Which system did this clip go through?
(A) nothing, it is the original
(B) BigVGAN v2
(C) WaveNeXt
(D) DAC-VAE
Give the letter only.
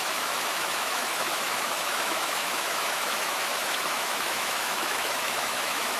D